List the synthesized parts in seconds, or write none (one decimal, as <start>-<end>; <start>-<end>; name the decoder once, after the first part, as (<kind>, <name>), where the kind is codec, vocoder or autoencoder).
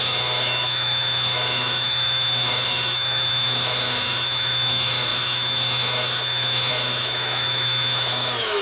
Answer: 0.0-8.6 (autoencoder, DAC-VAE)